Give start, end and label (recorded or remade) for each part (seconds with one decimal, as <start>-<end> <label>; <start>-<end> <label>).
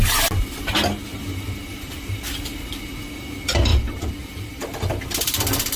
0.0-1.1 recorded; 1.1-2.8 remade; 2.8-3.7 recorded; 3.7-5.8 remade